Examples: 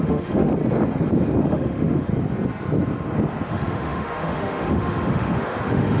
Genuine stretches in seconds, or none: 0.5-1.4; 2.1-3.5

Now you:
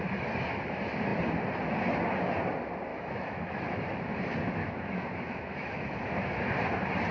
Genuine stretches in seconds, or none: 0.0-2.9; 3.8-4.6; 6.5-7.1

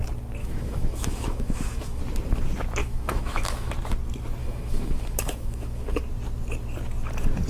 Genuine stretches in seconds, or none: 0.0-0.4; 2.0-2.8; 3.7-4.4; 6.0-7.5

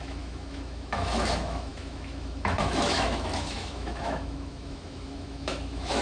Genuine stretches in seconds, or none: none